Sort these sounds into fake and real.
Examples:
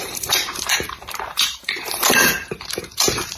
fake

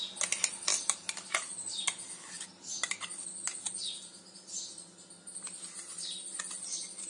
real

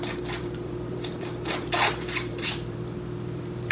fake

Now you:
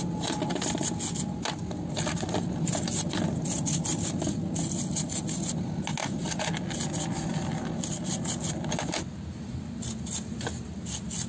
real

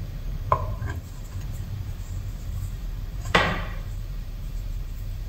fake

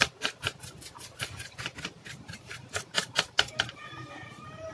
fake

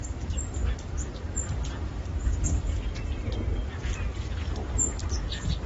real